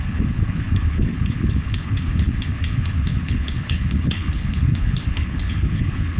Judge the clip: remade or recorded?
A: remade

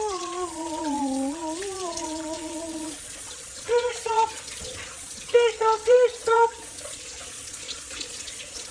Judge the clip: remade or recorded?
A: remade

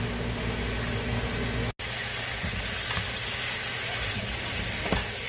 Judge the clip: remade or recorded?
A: recorded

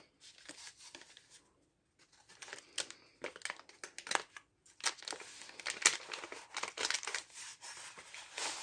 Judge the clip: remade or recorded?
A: recorded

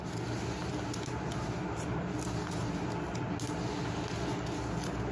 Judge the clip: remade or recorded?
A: recorded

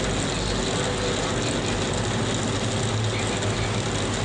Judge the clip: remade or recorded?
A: recorded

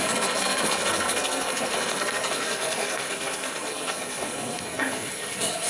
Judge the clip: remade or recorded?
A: remade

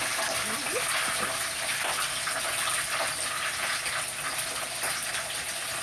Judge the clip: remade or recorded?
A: recorded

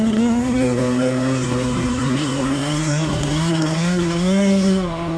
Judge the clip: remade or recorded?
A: remade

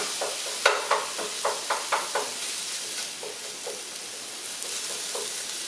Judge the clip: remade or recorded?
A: recorded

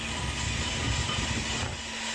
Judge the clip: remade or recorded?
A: recorded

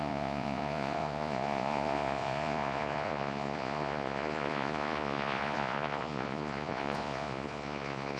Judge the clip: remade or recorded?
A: remade